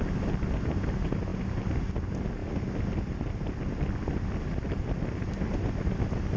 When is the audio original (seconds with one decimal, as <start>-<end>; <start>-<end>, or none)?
0.0-6.4